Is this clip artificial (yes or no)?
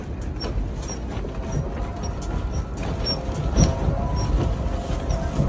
no